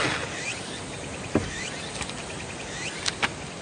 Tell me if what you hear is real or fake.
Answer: real